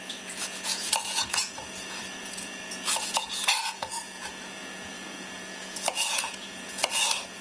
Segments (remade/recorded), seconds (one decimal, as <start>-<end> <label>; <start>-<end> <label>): 0.0-7.4 remade